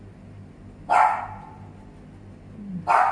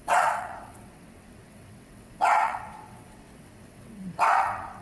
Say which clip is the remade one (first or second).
second